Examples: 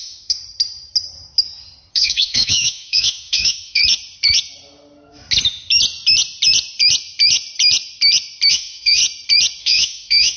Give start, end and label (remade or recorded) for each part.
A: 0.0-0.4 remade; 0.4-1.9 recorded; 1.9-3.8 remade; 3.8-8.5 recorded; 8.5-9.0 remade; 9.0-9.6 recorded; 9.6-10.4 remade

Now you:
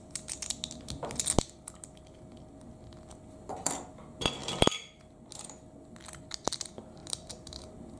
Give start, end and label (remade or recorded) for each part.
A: 0.0-4.4 recorded; 4.4-5.3 remade; 5.3-7.0 recorded; 7.0-7.5 remade; 7.5-8.0 recorded

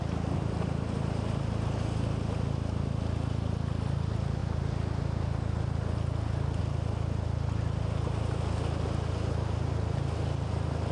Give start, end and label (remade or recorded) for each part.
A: 0.0-10.9 recorded

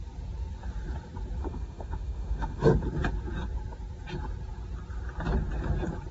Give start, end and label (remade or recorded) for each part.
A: 0.0-1.4 recorded; 1.4-2.6 remade; 2.6-6.1 recorded

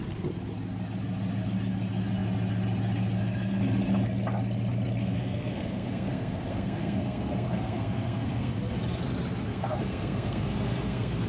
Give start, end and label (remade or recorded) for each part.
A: 0.0-5.0 recorded; 5.0-8.5 remade; 8.5-9.5 recorded; 9.5-11.3 remade